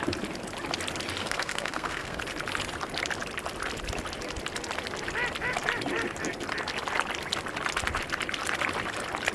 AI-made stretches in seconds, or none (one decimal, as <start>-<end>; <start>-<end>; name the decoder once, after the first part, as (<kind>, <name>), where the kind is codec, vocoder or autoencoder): 1.2-2.2 (codec, SNAC)